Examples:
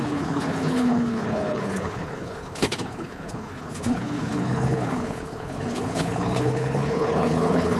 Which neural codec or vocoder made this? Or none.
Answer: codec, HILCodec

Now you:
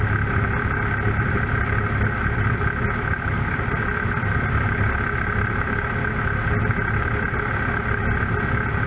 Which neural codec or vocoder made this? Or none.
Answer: none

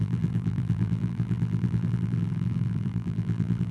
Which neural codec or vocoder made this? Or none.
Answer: vocoder, BigVGAN v2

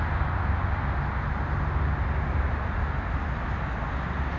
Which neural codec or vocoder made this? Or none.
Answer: none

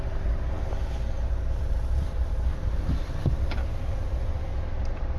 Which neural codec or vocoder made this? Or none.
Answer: none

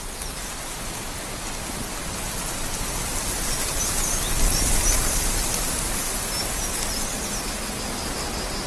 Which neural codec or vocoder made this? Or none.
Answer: none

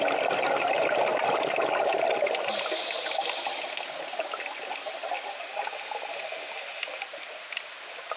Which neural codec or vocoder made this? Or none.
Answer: none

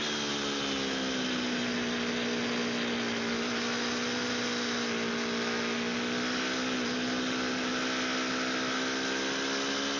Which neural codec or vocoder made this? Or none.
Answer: none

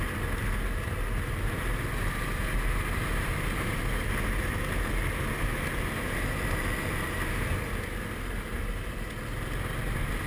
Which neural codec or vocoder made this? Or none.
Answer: none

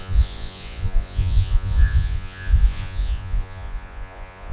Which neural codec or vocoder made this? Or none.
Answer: vocoder, Vocos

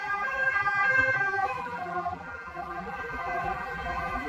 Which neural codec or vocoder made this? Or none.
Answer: vocoder, BigVGAN v2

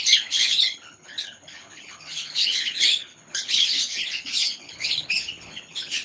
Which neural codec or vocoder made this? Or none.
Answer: codec, HILCodec